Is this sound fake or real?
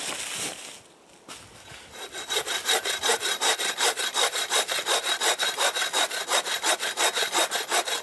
real